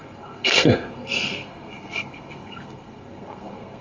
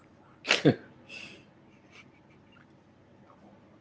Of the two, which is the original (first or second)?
second